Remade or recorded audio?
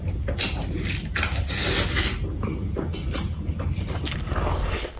recorded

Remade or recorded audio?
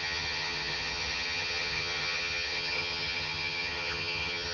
remade